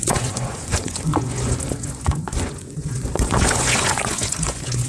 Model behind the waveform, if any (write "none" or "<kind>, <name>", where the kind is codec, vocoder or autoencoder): vocoder, Vocos